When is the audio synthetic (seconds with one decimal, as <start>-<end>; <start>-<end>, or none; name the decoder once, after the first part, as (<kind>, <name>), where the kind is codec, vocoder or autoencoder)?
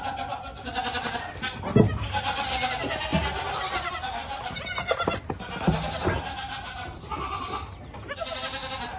none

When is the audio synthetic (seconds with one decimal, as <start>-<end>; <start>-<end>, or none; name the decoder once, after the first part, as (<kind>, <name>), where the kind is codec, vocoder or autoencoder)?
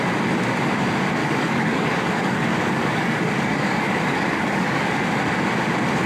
1.2-4.9 (codec, DAC)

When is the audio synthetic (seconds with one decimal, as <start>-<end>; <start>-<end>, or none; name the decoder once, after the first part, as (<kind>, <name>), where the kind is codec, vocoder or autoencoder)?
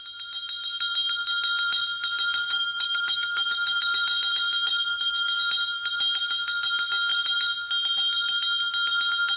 2.4-3.9 (codec, DAC); 4.9-5.4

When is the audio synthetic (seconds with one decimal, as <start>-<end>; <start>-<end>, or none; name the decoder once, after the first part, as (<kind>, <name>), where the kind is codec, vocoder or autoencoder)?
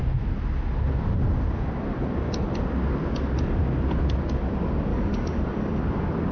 4.9-5.8 (codec, DAC)